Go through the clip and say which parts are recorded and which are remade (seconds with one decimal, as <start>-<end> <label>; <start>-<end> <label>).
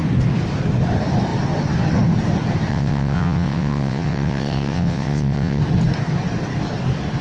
0.0-2.7 recorded; 2.7-5.6 remade; 5.6-7.2 recorded